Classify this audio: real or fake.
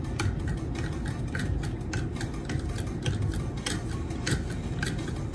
real